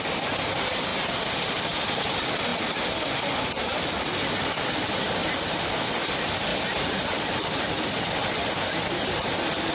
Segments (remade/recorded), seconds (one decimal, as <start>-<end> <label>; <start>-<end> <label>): 0.0-0.9 recorded; 0.9-1.4 remade; 1.4-5.2 recorded; 5.2-6.1 remade; 6.1-9.7 recorded